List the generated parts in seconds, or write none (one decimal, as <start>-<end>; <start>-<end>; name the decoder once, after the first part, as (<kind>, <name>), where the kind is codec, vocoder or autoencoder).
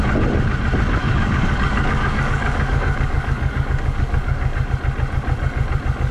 1.0-4.7 (codec, DAC)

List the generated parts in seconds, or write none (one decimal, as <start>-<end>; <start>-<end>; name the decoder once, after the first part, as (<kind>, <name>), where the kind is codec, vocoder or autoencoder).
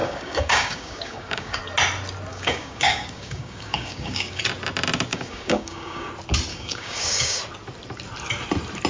0.0-1.6 (codec, DAC); 2.3-4.4; 5.1-6.1; 6.5-7.4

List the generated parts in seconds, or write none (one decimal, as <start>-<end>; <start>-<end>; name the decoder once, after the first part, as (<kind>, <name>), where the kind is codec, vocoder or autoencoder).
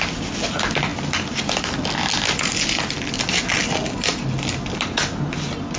none